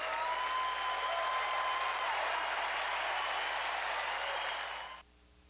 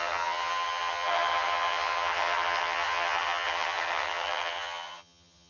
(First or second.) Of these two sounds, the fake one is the second